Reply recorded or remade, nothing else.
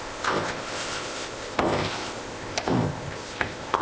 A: remade